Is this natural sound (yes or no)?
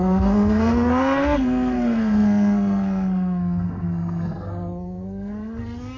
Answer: no